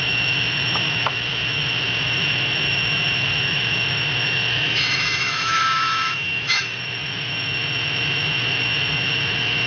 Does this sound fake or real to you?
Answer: fake